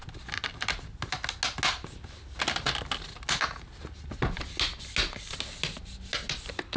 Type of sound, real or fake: real